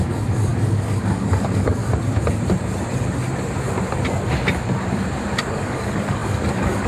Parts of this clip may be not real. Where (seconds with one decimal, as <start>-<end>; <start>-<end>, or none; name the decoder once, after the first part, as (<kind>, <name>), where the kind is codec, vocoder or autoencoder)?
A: 0.0-1.8 (codec, DAC); 5.4-6.9